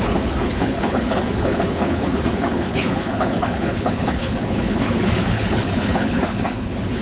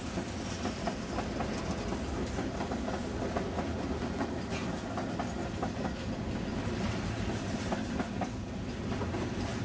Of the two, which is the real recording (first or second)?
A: second